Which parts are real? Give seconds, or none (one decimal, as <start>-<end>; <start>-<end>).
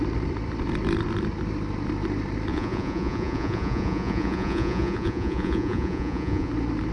0.0-2.5; 6.5-6.9